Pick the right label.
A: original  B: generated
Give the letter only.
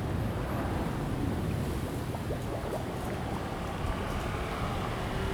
A